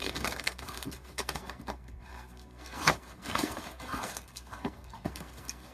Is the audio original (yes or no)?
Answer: no